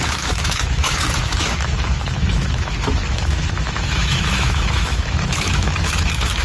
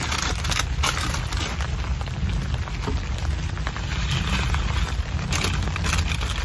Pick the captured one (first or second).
second